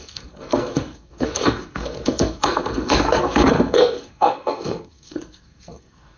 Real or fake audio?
fake